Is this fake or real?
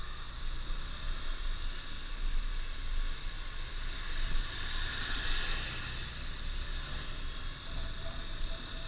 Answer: real